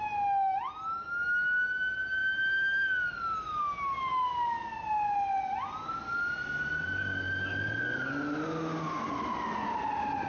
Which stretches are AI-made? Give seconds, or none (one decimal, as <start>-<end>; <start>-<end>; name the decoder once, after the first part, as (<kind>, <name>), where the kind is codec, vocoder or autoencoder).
none